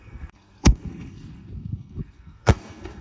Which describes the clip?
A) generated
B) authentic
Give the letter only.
A